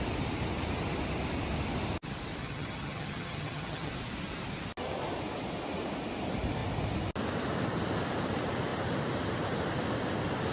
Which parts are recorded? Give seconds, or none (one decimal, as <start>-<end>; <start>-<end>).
0.0-2.4; 3.9-10.5